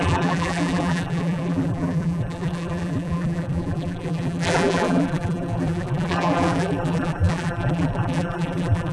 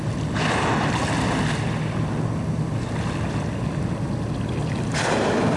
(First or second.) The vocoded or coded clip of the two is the first